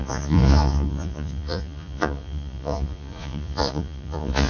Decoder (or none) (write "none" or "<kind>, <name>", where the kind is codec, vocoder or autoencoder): vocoder, Vocos